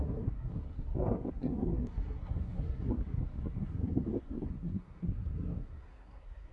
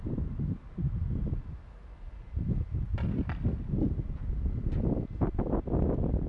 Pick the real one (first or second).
second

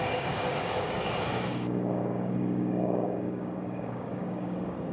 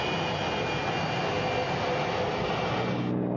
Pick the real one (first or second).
second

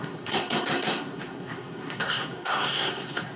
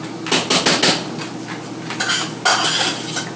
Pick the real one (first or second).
second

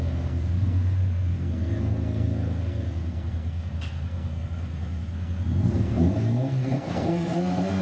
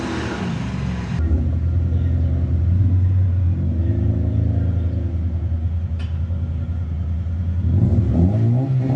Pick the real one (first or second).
second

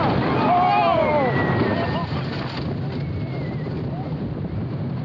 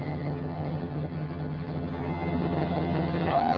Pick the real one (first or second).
first